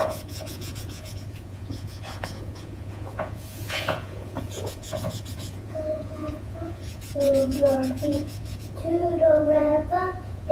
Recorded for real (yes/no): no